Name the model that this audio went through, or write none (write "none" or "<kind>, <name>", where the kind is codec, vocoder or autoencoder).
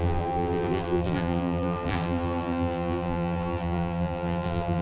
vocoder, BigVGAN v2